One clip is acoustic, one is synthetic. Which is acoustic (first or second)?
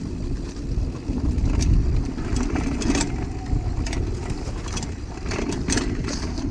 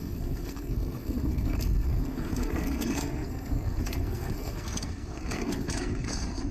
first